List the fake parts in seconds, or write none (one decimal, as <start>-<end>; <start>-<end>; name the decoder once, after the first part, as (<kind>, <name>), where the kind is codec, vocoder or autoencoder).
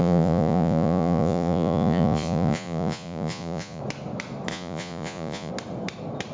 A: 0.0-3.8 (vocoder, Vocos); 4.5-5.5